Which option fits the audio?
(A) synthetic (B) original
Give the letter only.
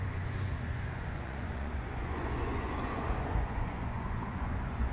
A